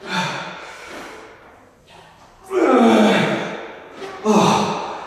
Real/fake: real